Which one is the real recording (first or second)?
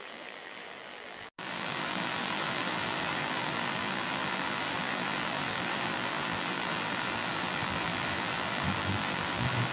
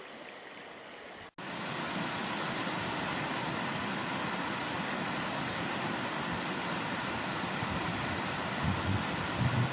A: second